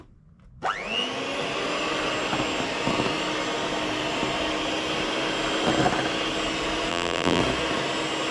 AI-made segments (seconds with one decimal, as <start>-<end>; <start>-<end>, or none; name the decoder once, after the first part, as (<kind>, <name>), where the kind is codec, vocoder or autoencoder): 6.9-7.4 (vocoder, BigVGAN v2)